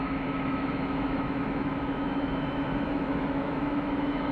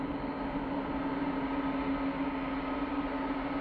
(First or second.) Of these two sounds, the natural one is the second